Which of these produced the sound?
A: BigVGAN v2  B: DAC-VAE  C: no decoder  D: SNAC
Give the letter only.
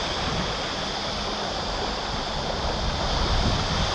C